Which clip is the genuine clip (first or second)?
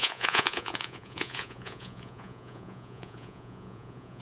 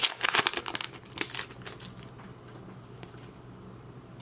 second